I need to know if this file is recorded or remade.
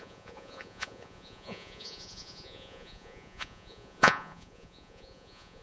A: remade